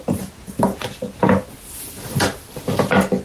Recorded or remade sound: recorded